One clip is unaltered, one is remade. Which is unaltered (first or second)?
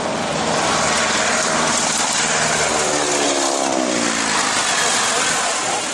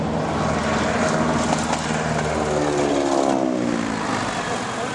second